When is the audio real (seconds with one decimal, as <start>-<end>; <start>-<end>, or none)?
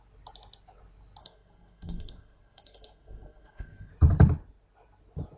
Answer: 0.0-1.2; 3.9-5.4